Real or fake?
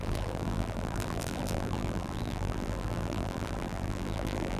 fake